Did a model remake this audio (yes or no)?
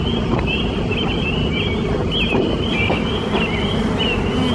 no